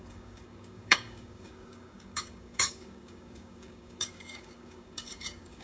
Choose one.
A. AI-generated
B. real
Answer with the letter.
A